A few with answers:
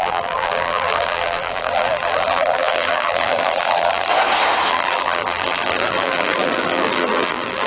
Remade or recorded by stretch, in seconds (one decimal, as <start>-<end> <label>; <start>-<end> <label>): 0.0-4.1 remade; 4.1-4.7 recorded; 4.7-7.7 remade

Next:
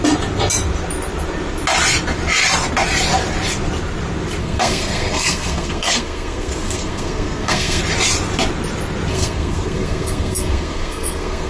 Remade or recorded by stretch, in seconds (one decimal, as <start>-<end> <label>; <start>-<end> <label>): 0.0-4.4 recorded; 4.4-7.8 remade; 7.8-9.1 recorded; 9.1-11.5 remade

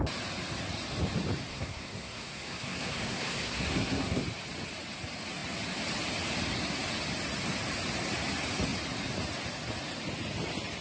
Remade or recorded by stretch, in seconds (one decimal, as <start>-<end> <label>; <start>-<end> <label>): 0.0-1.5 recorded; 1.5-4.2 remade; 4.2-10.8 recorded

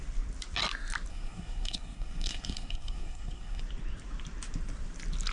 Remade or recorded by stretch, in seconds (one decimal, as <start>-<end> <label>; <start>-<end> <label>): 0.0-1.1 recorded; 1.1-3.6 remade; 3.6-5.3 recorded

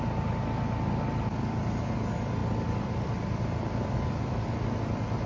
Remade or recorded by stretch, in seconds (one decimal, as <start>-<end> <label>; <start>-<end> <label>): 0.0-2.4 recorded; 2.4-4.7 remade; 4.7-5.3 recorded

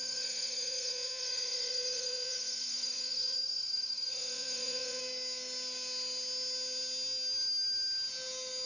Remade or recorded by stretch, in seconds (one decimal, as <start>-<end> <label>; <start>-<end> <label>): 0.0-5.0 remade; 5.0-8.7 recorded

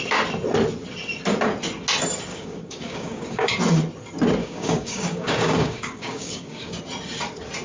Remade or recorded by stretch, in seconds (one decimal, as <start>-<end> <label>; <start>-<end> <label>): 0.0-2.3 recorded; 2.3-3.5 remade; 3.5-4.4 recorded; 4.4-6.8 remade; 6.8-7.6 recorded

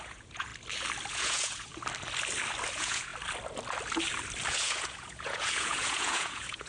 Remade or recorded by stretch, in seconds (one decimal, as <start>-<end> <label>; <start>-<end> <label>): 0.0-0.5 remade; 0.5-1.1 recorded; 1.1-1.7 remade; 1.7-2.7 recorded; 2.7-3.1 remade; 3.1-4.5 recorded; 4.5-6.7 remade